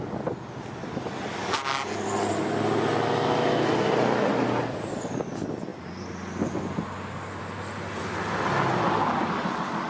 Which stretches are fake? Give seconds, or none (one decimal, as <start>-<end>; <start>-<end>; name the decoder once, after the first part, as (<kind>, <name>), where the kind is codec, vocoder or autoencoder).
none